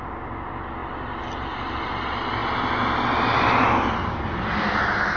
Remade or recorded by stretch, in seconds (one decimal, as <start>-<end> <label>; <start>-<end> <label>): 0.0-5.2 recorded